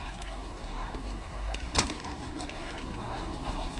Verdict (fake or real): fake